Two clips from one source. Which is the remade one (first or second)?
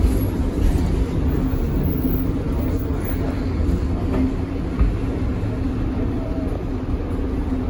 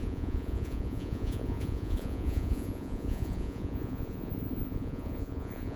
second